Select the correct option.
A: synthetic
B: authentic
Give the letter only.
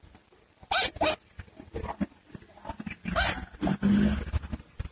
B